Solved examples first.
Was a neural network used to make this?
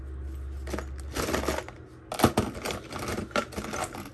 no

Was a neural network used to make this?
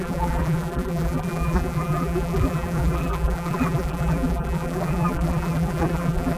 yes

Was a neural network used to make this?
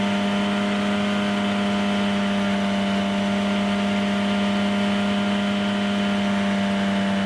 no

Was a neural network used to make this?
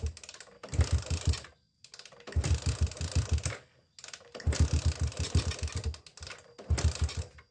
no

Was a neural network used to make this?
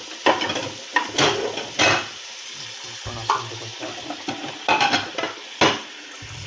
no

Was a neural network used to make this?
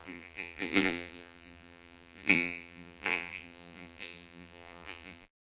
yes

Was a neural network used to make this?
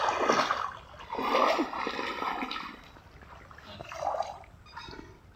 no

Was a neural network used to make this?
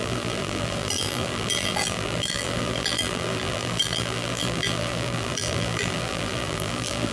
yes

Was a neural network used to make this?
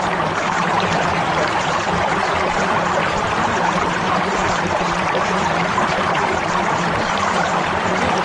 yes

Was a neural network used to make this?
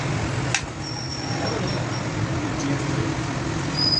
no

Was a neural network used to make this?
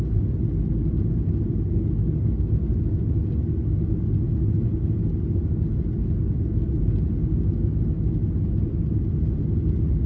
no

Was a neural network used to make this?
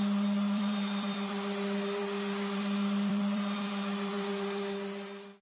yes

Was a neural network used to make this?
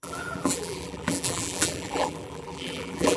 yes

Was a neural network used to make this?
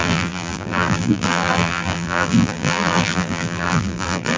yes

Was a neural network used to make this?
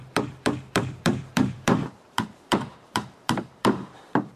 yes